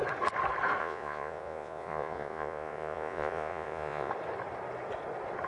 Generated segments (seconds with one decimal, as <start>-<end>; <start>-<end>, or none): 0.8-4.1